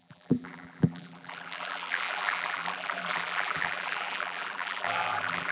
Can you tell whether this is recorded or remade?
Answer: remade